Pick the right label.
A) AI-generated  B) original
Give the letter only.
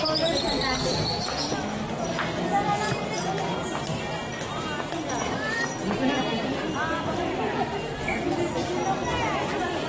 B